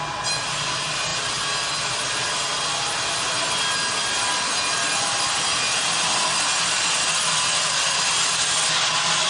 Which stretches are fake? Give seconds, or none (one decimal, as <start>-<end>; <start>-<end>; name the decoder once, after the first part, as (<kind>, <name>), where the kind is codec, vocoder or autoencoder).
none